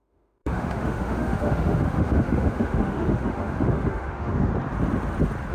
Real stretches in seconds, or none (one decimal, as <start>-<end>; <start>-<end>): 4.5-5.5